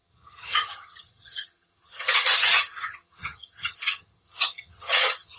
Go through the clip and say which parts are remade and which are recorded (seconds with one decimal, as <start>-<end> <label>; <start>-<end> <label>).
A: 0.0-5.4 remade